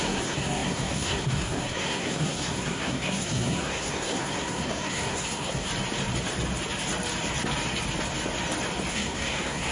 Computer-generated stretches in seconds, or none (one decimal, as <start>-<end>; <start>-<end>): 0.0-5.7; 8.9-9.7

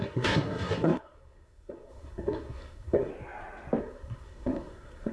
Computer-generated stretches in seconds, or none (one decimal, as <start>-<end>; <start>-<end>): 0.0-3.1; 3.8-5.1

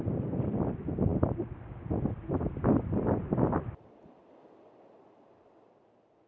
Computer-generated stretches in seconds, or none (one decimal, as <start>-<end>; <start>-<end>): none

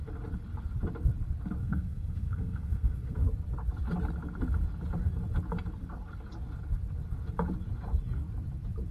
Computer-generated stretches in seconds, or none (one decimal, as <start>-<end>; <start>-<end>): 1.6-3.2